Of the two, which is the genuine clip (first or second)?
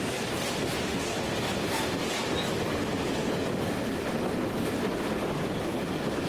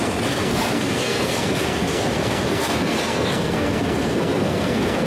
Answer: first